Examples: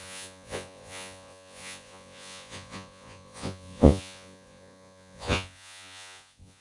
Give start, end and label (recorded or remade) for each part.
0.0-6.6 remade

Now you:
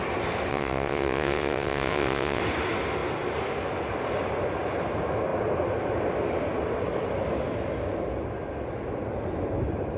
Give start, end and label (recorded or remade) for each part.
0.0-0.5 recorded; 0.5-2.4 remade; 2.4-10.0 recorded

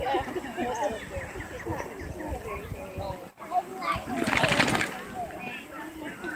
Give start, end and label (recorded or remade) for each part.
0.0-6.4 recorded

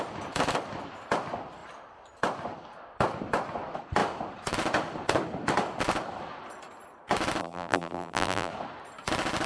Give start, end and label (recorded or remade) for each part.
0.0-7.4 recorded; 7.4-8.5 remade; 8.5-9.5 recorded

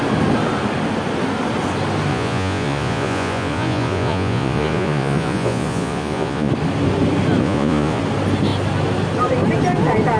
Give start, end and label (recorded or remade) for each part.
0.0-2.1 recorded; 2.1-6.5 remade; 6.5-7.4 recorded; 7.4-8.0 remade; 8.0-10.2 recorded

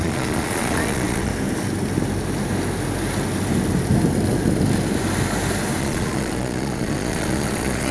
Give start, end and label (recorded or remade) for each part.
0.0-1.3 remade; 1.3-5.8 recorded; 5.8-7.9 remade

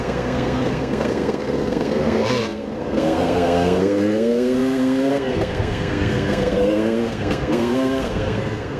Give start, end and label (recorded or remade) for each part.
0.0-8.8 remade